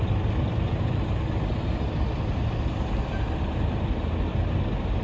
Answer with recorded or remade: recorded